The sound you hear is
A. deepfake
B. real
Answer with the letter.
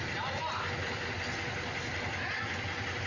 B